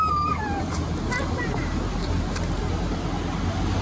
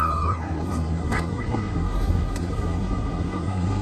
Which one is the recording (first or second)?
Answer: first